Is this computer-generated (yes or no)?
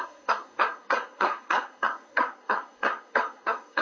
yes